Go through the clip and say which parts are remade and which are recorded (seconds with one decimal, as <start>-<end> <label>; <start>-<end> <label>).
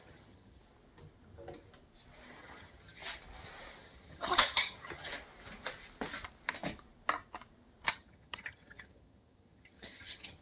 0.0-0.6 remade; 0.6-2.4 recorded; 2.4-3.0 remade; 3.0-3.8 recorded; 3.8-5.1 remade; 5.1-7.9 recorded; 7.9-10.4 remade